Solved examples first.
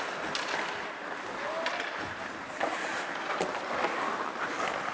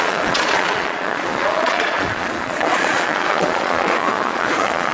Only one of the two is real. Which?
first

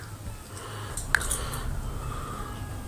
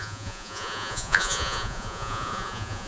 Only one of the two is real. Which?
first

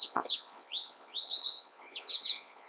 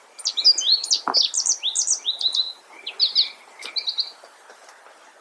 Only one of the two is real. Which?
second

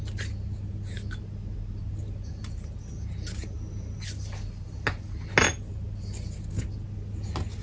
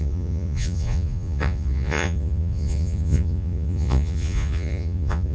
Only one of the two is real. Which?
first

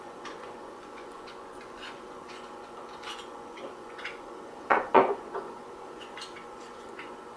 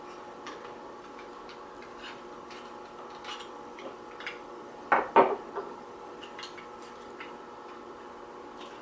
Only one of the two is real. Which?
second